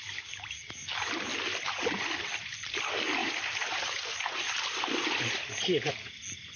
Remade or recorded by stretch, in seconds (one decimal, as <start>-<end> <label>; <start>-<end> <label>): 0.0-1.3 recorded; 1.3-2.8 remade; 2.8-3.2 recorded; 3.2-5.9 remade; 5.9-6.6 recorded